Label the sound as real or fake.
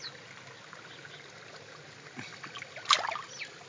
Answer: real